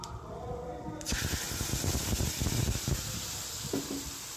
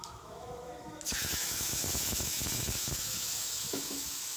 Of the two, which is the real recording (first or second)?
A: first